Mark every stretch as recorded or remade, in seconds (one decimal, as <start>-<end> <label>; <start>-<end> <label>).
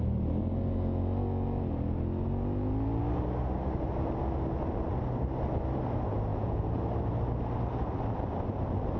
0.0-6.3 recorded; 6.3-6.8 remade; 6.8-9.0 recorded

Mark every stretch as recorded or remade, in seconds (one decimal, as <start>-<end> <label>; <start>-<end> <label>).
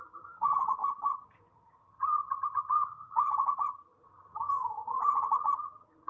0.0-6.1 remade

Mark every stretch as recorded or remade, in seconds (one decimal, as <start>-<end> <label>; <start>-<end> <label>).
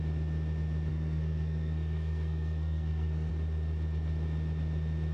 0.0-0.9 recorded; 0.9-3.3 remade; 3.3-5.1 recorded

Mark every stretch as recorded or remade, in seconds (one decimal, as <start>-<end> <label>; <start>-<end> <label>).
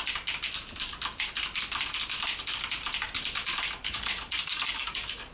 0.0-3.8 recorded; 3.8-5.3 remade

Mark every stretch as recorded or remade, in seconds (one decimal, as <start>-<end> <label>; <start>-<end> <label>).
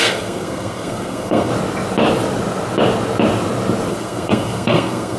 0.0-1.5 remade; 1.5-3.9 recorded; 3.9-5.2 remade